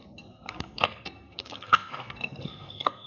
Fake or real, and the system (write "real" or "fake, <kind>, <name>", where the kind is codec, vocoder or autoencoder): fake, codec, SNAC